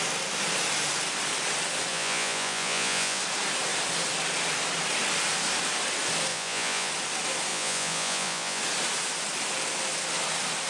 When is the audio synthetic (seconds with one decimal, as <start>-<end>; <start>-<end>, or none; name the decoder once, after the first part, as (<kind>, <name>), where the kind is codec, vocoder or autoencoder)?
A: 1.9-3.2 (vocoder, Vocos); 6.3-6.9; 7.5-8.6